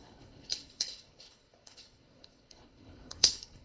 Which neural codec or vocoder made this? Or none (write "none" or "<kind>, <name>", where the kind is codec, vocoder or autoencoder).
codec, HILCodec